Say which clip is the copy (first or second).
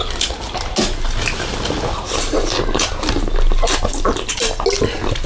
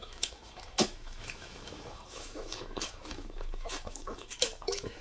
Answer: second